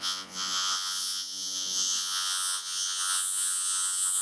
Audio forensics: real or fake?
fake